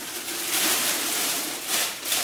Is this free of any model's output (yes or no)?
no